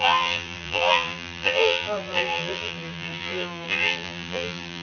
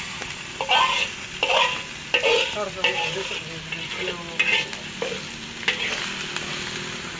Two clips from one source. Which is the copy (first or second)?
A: first